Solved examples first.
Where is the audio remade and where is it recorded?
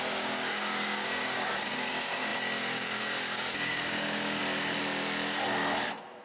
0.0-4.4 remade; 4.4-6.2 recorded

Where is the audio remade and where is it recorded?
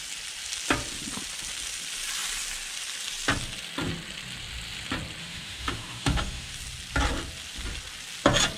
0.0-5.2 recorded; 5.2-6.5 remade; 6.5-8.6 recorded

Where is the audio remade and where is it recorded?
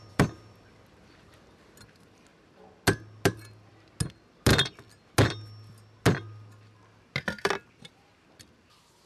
0.0-1.8 remade; 1.8-9.1 recorded